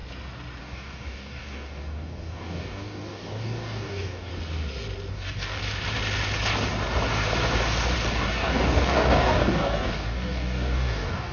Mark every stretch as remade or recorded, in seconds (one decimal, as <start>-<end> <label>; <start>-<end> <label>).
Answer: 0.0-0.6 recorded; 0.6-4.3 remade; 4.3-5.1 recorded; 5.1-5.6 remade; 5.6-8.1 recorded; 8.1-11.3 remade